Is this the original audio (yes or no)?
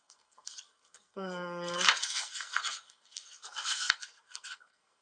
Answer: no